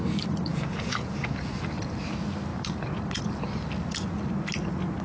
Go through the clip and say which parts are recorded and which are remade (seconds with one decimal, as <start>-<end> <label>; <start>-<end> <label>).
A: 0.0-0.5 recorded; 0.5-1.6 remade; 1.6-5.0 recorded